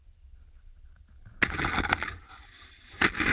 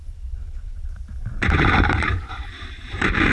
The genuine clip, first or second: first